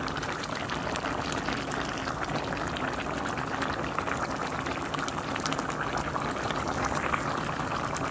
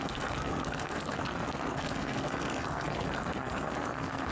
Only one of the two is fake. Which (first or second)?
second